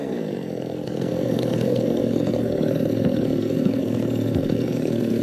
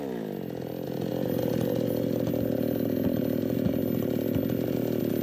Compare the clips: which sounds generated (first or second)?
first